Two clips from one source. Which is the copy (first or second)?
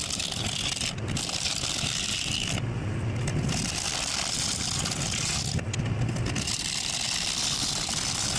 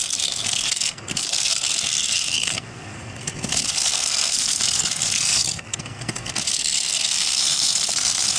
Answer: second